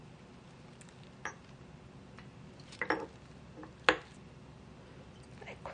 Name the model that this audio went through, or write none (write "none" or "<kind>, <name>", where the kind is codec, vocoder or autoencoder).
none